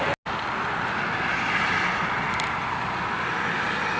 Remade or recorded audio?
recorded